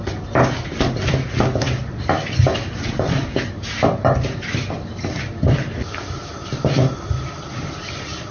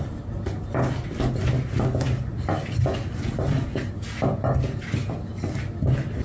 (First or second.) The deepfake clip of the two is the first